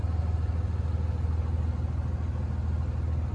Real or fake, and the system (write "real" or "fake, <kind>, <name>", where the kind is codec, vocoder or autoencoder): real